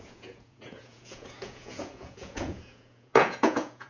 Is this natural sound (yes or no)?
no